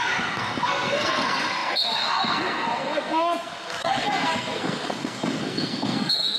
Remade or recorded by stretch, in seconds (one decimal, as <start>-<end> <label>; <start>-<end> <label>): 0.0-6.4 remade